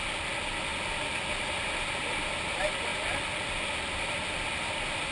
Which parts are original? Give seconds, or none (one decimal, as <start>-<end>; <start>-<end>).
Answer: 0.0-5.1